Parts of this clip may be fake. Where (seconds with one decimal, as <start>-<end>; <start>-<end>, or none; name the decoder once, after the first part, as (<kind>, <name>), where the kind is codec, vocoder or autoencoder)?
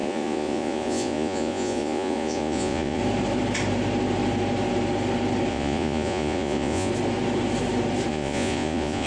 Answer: 0.0-3.0 (vocoder, Vocos); 5.5-6.9; 8.1-9.1